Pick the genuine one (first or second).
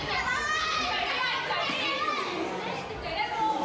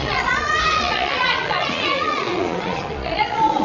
first